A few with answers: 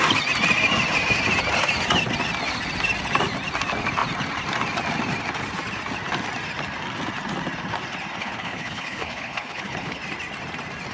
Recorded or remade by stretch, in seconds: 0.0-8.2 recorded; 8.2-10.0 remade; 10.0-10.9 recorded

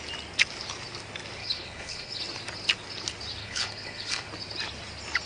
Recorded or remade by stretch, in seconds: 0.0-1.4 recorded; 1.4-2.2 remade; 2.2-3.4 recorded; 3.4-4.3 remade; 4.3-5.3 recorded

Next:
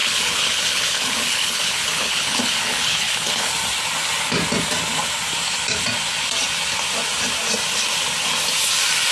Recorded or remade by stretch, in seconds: 0.0-3.5 remade; 3.5-9.1 recorded